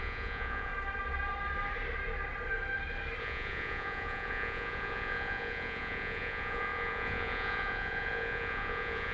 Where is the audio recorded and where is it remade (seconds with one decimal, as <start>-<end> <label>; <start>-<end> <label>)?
0.0-0.7 remade; 0.7-3.2 recorded; 3.2-9.1 remade